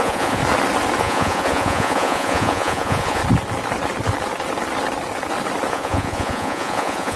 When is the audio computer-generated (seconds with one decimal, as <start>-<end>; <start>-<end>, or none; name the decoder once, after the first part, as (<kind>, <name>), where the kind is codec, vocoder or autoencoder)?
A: 0.0-0.4 (vocoder, Vocos); 1.0-3.2; 5.7-7.2